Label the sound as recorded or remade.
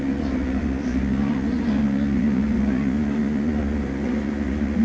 remade